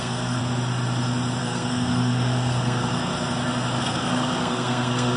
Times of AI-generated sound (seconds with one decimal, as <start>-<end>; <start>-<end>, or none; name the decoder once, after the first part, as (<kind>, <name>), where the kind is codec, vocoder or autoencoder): 0.0-0.4 (codec, SNAC); 1.4-3.1; 3.8-5.2